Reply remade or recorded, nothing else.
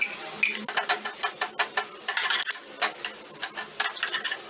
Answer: recorded